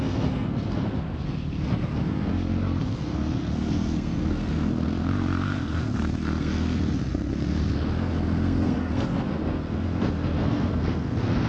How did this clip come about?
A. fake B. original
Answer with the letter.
A